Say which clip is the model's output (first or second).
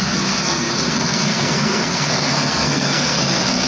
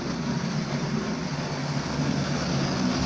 first